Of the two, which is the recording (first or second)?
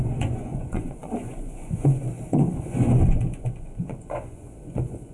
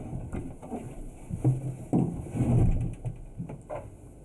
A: second